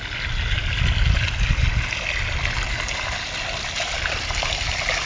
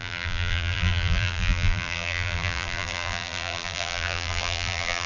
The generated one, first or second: second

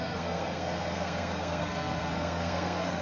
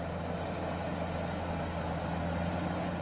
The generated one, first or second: first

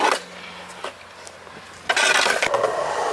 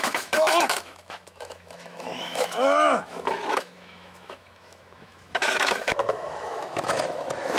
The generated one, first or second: second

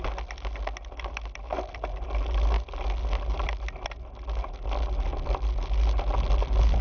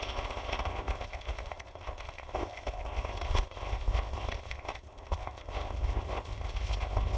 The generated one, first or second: second